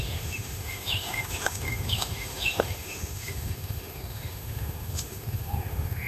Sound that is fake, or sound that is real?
fake